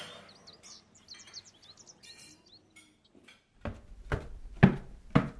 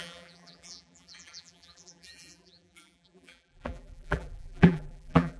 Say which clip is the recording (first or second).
first